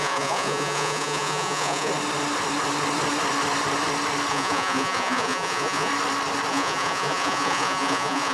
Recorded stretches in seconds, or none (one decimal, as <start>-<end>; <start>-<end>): 1.9-4.3; 5.9-6.5

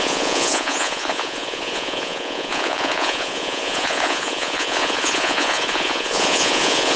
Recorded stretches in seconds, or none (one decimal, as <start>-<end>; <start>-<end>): none

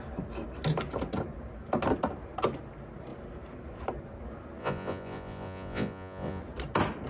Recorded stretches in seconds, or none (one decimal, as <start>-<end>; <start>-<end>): 0.0-4.6; 6.4-7.1